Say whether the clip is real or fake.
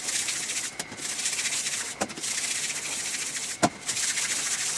real